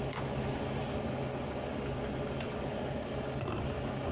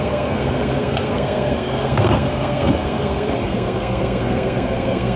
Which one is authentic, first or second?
first